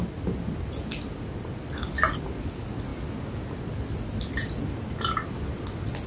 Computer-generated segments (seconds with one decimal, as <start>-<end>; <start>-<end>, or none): none